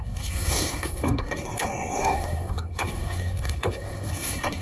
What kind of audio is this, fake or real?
fake